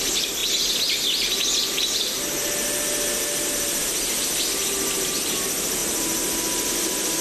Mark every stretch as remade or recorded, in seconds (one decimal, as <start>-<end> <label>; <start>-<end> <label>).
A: 0.0-7.2 recorded